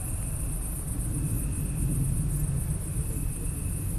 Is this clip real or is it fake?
real